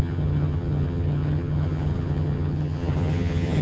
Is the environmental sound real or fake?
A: fake